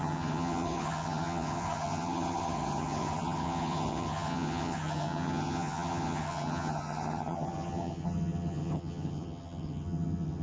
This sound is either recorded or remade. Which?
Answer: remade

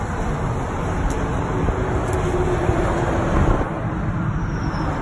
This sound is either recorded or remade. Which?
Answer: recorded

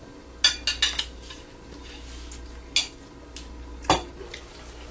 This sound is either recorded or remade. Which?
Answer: recorded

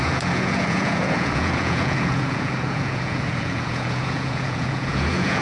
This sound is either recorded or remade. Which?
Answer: remade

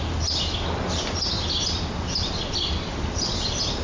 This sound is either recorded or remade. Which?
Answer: recorded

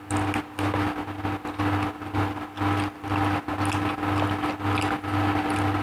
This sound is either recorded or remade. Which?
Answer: recorded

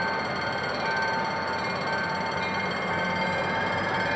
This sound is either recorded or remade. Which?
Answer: recorded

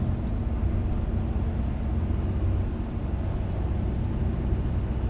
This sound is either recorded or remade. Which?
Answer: recorded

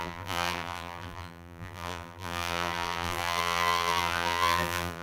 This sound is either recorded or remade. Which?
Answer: remade